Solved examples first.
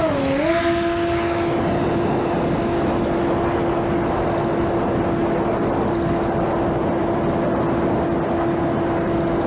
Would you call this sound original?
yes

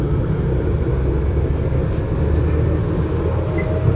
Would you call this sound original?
yes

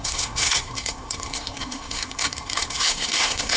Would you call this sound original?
no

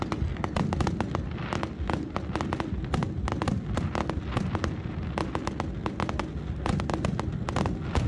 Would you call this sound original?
yes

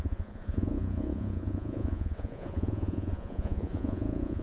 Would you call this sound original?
no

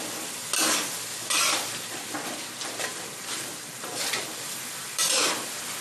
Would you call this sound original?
no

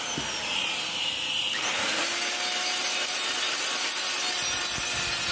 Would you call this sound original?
yes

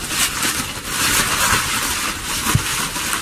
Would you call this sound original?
yes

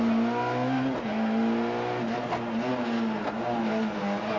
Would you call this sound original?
yes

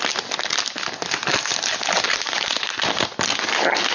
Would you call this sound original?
yes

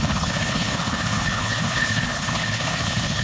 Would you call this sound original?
no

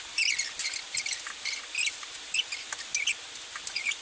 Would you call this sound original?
yes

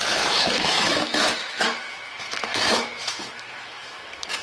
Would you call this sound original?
no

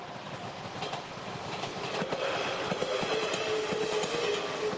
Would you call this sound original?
yes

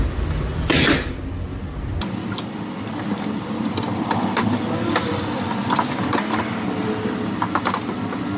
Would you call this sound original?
yes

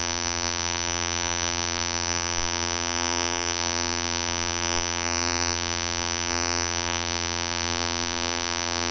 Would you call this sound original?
no